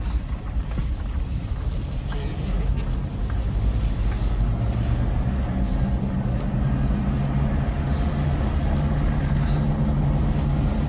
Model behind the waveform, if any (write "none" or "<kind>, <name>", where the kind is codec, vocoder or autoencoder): none